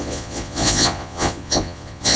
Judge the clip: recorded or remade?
remade